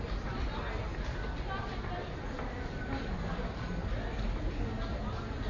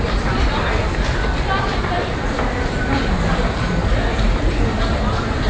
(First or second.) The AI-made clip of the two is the second